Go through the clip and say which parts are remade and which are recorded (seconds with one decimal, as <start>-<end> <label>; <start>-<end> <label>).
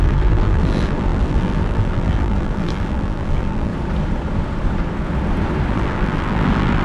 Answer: 0.0-3.7 remade; 3.7-5.7 recorded; 5.7-6.8 remade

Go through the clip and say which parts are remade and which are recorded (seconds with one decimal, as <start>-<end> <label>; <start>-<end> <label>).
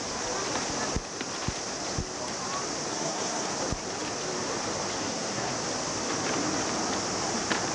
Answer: 0.0-2.9 recorded; 2.9-3.5 remade; 3.5-5.0 recorded; 5.0-5.5 remade; 5.5-7.7 recorded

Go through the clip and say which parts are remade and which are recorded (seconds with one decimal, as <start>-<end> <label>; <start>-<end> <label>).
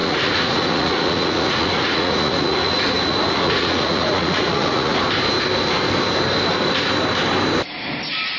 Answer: 0.0-5.0 remade; 5.0-8.4 recorded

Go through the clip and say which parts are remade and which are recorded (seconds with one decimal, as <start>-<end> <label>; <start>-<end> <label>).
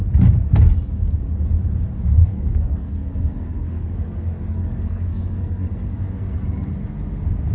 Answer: 0.0-2.2 recorded; 2.2-6.7 remade; 6.7-7.5 recorded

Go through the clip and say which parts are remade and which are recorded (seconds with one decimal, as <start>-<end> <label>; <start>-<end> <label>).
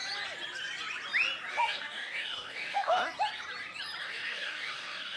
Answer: 0.0-1.5 recorded; 1.5-3.0 remade; 3.0-4.0 recorded; 4.0-5.2 remade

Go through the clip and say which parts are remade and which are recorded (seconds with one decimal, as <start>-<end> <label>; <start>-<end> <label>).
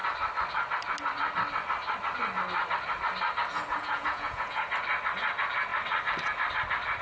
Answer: 0.0-3.7 recorded; 3.7-4.6 remade; 4.6-7.0 recorded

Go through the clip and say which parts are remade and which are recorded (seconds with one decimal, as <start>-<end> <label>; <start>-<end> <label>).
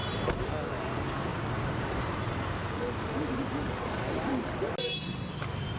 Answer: 0.0-5.8 recorded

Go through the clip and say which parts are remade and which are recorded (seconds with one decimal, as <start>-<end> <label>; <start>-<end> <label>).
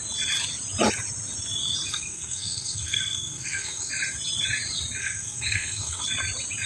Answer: 0.0-1.9 recorded; 1.9-3.9 remade; 3.9-5.0 recorded; 5.0-6.0 remade; 6.0-6.7 recorded